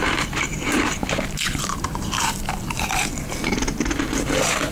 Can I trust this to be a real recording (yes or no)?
no